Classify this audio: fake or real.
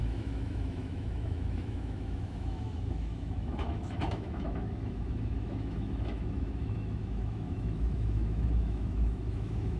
fake